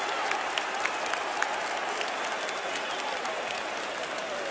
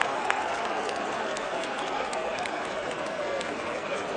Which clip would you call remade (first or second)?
second